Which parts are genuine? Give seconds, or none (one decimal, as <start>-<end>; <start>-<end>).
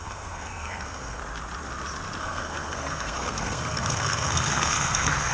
1.2-2.2